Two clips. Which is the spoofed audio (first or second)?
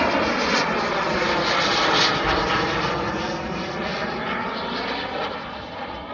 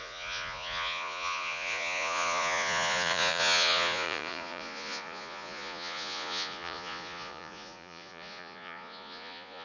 second